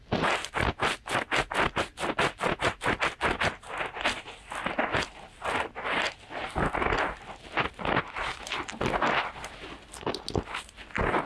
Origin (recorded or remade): recorded